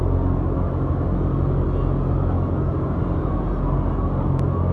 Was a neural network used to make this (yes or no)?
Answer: no